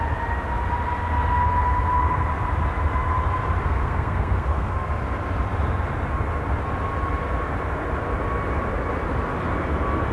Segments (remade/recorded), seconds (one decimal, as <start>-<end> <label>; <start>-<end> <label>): 0.0-3.6 recorded; 3.6-4.9 remade; 4.9-10.1 recorded